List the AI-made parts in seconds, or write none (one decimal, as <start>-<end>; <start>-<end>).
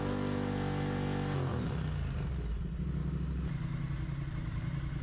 none